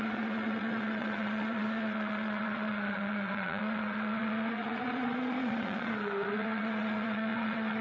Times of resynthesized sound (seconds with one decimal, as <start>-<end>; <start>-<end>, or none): 0.0-7.8